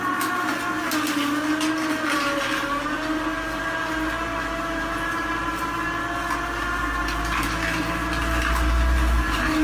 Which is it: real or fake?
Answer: real